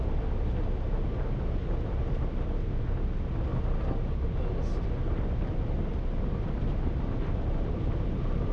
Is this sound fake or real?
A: real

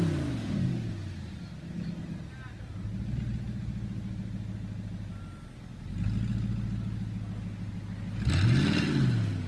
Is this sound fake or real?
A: real